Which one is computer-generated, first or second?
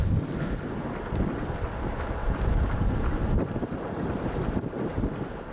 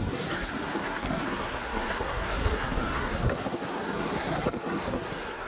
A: second